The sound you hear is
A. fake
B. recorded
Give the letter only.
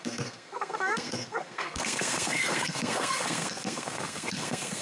A